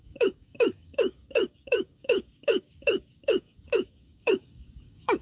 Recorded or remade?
remade